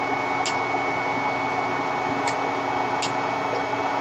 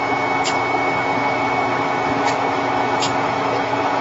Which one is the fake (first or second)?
second